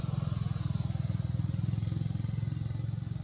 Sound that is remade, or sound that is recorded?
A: recorded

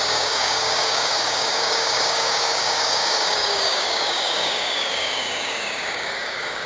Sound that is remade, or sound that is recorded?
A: remade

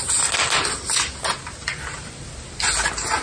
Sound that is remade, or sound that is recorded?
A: recorded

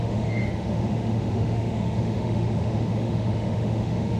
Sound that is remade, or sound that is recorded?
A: remade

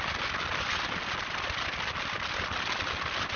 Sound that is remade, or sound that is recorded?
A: recorded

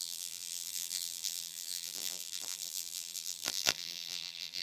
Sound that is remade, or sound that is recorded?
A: remade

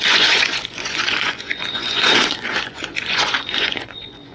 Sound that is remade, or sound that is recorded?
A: remade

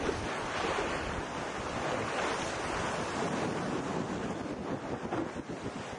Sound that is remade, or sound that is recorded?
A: recorded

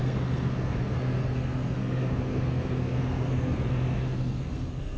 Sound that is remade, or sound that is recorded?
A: remade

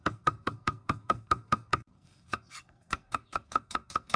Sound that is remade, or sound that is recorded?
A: remade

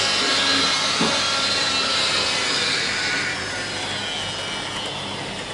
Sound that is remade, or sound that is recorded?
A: recorded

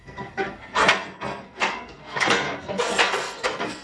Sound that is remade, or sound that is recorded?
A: remade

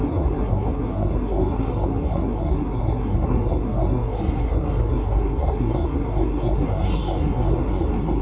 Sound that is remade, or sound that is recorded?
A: remade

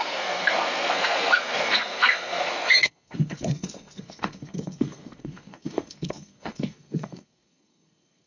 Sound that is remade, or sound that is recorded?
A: remade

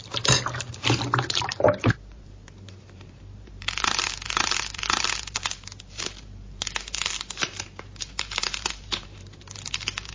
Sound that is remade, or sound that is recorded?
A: remade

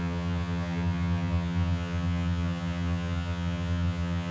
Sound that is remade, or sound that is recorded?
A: remade